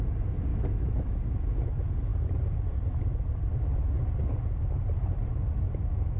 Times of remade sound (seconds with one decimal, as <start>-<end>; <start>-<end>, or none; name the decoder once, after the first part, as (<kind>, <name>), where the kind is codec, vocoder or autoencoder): 0.5-1.2 (autoencoder, DAC-VAE)